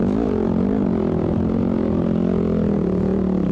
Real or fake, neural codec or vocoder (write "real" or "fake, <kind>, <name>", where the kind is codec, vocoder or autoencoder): real